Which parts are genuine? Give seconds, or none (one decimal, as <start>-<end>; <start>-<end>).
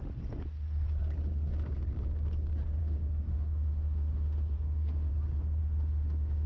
0.0-2.8; 5.1-5.6